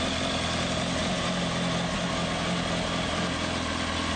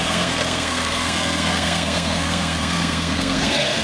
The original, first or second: first